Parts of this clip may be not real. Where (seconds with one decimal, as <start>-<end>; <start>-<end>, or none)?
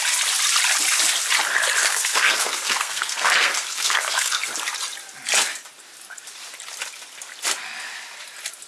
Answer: 1.8-4.4